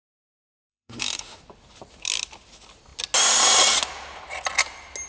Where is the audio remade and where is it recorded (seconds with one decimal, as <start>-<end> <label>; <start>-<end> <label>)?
0.0-0.7 recorded; 0.7-1.4 remade; 1.4-5.1 recorded